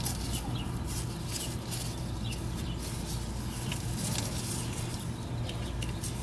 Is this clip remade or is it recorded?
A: recorded